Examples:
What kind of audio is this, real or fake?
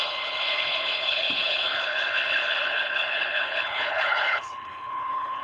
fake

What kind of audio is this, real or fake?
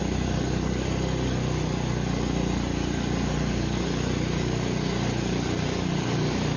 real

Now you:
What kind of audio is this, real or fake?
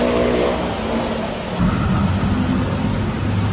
real